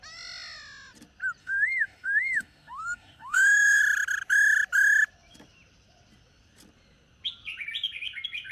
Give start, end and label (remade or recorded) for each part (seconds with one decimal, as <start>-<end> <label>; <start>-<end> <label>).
0.0-1.4 recorded; 1.4-3.8 remade; 3.8-8.5 recorded